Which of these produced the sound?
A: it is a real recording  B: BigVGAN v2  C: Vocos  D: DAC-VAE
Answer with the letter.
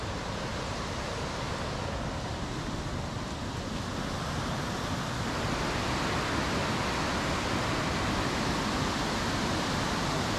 A